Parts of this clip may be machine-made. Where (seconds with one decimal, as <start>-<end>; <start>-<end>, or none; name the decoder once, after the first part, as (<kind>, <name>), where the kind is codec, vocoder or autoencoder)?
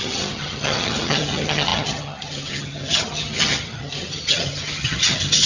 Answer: 0.0-5.5 (vocoder, HiFi-GAN)